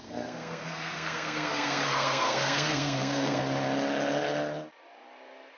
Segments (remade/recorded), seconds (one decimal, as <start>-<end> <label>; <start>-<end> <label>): 0.0-3.4 remade; 3.4-5.6 recorded